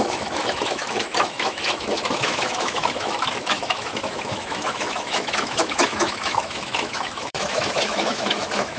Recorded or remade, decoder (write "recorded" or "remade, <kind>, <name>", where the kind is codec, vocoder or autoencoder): remade, autoencoder, DAC-VAE